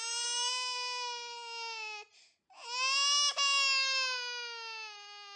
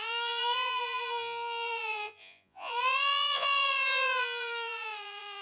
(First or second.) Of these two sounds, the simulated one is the second